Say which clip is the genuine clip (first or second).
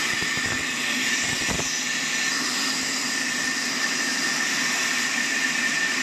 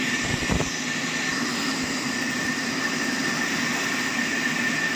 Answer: first